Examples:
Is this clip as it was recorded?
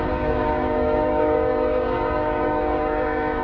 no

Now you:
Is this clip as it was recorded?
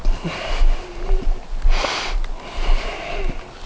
yes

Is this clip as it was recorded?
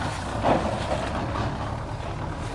yes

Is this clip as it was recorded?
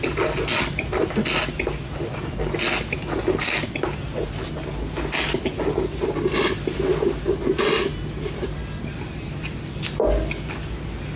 yes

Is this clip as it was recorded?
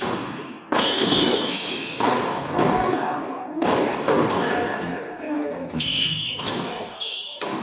no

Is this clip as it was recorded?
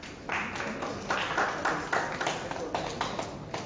yes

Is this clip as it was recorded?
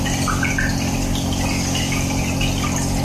yes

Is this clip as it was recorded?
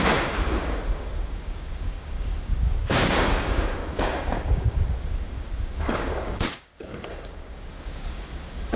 no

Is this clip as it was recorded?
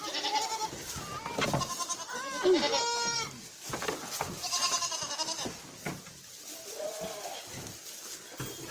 yes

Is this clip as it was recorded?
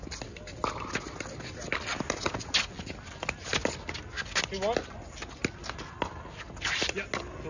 yes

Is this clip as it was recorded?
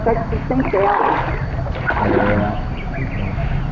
yes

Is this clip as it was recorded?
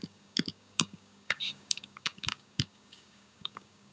no